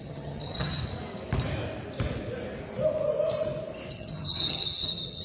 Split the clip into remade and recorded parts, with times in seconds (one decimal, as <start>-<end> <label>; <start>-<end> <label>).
0.0-0.8 remade; 0.8-3.9 recorded; 3.9-5.2 remade